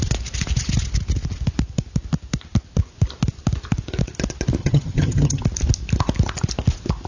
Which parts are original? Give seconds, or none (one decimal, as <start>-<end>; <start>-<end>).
0.0-4.6; 5.4-7.1